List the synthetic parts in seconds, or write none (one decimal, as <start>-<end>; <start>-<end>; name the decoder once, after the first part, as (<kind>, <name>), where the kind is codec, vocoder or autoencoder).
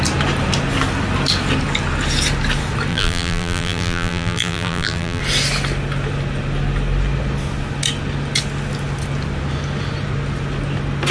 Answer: 2.9-5.2 (vocoder, BigVGAN v2)